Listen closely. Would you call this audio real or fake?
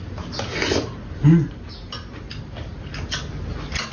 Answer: real